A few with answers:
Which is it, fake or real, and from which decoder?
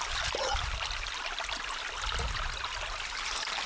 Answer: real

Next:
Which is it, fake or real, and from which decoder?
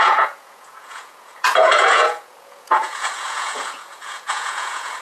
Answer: fake, vocoder, Vocos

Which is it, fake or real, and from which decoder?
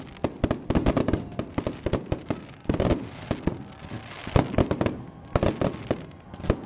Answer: real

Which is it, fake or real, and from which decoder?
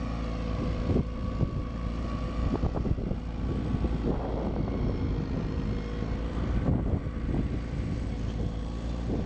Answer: real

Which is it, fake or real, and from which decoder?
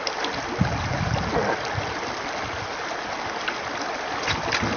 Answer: real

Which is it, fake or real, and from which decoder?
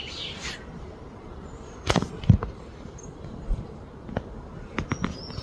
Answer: real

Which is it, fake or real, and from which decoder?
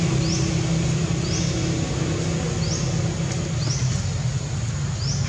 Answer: real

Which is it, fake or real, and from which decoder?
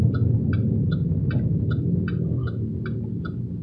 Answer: real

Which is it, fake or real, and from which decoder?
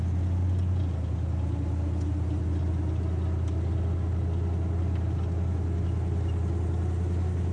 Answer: real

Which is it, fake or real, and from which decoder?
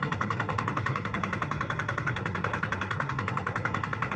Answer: fake, codec, SNAC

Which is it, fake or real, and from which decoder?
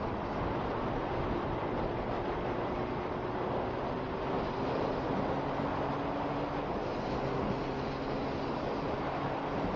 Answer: real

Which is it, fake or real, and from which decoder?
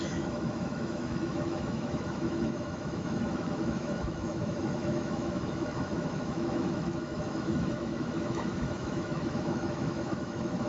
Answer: fake, autoencoder, DAC-VAE